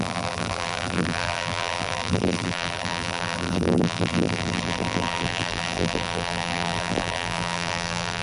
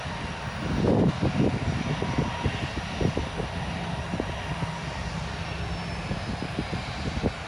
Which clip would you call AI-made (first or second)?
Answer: first